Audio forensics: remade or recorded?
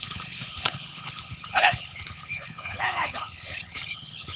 remade